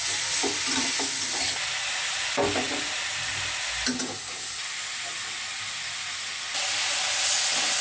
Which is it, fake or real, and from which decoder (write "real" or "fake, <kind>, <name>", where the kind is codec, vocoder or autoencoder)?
real